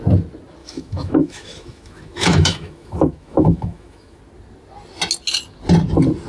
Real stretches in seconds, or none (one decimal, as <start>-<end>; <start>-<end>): 0.0-0.6; 4.2-6.3